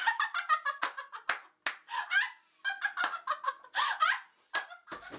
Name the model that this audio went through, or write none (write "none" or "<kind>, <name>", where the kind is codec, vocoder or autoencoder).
none